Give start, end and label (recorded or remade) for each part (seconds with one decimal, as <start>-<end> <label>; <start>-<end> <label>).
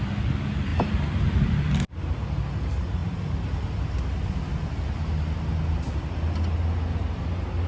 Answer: 0.0-7.7 recorded